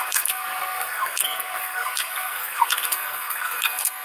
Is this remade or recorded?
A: remade